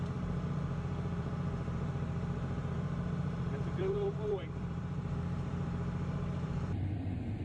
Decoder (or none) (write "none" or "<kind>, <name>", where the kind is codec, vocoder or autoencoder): vocoder, BigVGAN v2